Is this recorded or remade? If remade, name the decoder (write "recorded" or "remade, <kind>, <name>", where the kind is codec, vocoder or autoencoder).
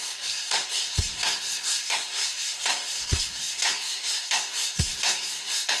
remade, codec, SNAC